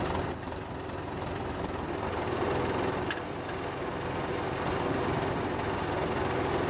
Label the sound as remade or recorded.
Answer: recorded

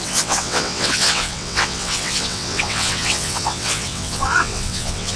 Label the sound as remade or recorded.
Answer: remade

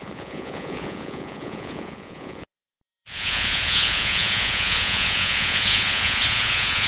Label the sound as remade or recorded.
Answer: remade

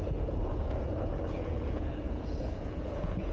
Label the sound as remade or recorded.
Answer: remade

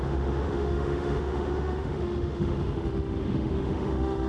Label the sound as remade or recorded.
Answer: remade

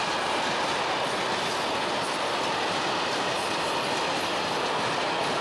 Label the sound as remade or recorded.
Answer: recorded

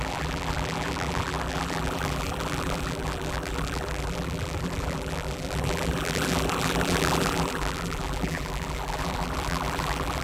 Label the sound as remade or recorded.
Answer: remade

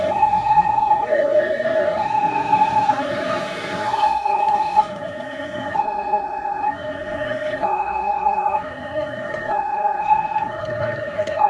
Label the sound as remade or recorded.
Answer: remade